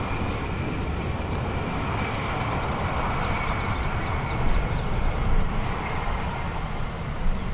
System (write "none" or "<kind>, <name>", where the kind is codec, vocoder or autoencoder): none